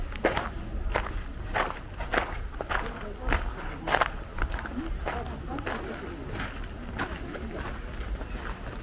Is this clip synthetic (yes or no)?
no